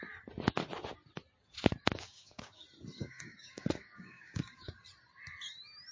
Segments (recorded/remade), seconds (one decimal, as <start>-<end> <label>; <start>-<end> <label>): 0.0-1.8 recorded; 1.8-2.6 remade; 2.6-3.0 recorded; 3.0-4.7 remade; 4.7-5.9 recorded